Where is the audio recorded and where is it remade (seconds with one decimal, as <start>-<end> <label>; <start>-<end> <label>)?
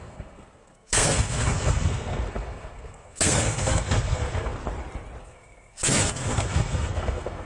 0.0-4.6 remade; 4.6-5.2 recorded; 5.2-7.5 remade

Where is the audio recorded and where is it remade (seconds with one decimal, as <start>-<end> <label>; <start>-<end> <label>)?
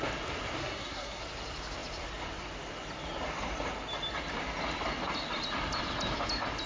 0.0-0.6 recorded; 0.6-1.2 remade; 1.2-6.7 recorded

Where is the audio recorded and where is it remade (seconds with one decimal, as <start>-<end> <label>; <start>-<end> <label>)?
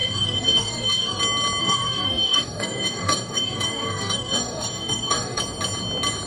0.0-1.2 remade; 1.2-1.6 recorded; 1.6-5.4 remade; 5.4-6.3 recorded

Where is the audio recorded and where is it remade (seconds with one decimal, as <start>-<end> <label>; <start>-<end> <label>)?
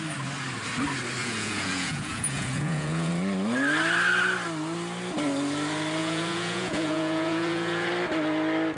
0.0-1.2 recorded; 1.2-3.1 remade; 3.1-6.0 recorded; 6.0-7.9 remade; 7.9-8.8 recorded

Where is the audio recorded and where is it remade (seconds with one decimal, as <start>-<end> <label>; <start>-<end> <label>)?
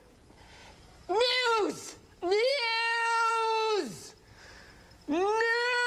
0.0-0.6 recorded; 0.6-1.3 remade; 1.3-5.9 recorded